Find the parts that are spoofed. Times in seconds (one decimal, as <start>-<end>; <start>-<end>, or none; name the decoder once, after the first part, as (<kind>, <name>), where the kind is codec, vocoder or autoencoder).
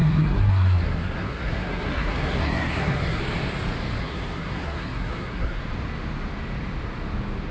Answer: 0.0-3.2 (codec, SNAC); 4.0-5.6